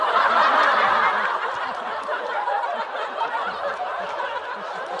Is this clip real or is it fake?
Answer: real